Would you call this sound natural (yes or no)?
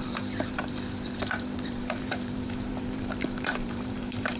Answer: no